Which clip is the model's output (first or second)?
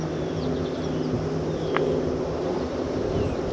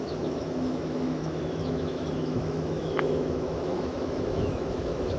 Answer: second